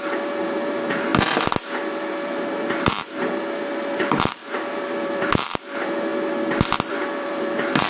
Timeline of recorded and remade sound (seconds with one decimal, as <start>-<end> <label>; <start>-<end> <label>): 0.0-1.1 remade; 1.1-1.9 recorded; 1.9-6.1 remade; 6.1-6.9 recorded; 6.9-7.9 remade